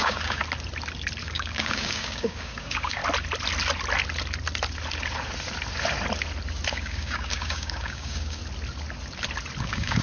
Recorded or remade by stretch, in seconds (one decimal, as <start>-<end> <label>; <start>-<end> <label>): 0.0-0.4 remade; 0.4-1.2 recorded; 1.2-3.0 remade; 3.0-6.7 recorded; 6.7-8.4 remade; 8.4-9.6 recorded; 9.6-10.0 remade